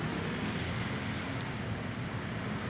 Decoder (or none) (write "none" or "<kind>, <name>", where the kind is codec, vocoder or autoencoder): none